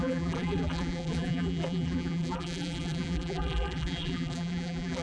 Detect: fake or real fake